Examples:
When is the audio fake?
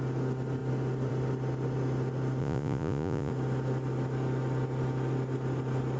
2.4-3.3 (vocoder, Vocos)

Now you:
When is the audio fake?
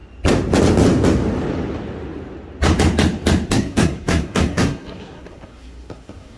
3.5-6.4 (codec, SNAC)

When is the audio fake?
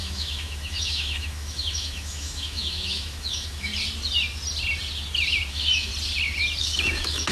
0.0-3.7 (autoencoder, DAC-VAE); 5.5-5.9; 6.6-7.3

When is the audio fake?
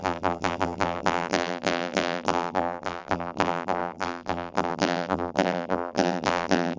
0.0-6.8 (vocoder, BigVGAN v2)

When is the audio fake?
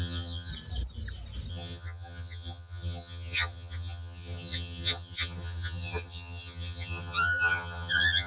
0.0-0.5 (vocoder, HiFi-GAN); 1.5-8.3